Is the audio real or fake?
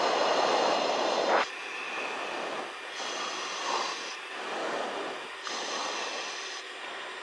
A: real